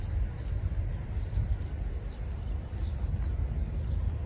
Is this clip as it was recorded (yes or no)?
yes